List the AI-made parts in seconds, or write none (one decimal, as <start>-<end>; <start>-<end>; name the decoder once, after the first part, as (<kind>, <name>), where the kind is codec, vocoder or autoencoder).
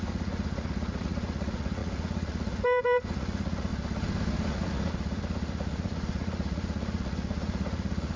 0.0-3.7 (vocoder, Vocos); 4.5-8.2